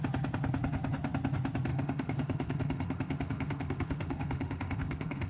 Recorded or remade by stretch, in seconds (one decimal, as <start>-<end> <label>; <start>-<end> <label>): 0.0-1.7 recorded; 1.7-5.3 remade